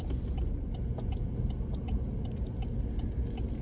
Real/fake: real